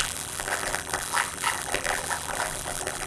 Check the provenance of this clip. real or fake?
fake